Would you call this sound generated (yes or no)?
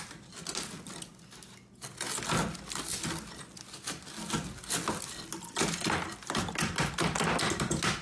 no